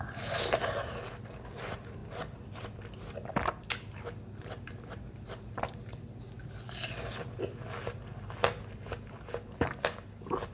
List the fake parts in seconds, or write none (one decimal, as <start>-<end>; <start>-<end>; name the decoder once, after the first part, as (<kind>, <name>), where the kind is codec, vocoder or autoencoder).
none